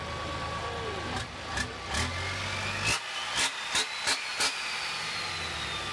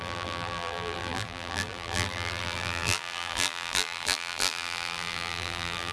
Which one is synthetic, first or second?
second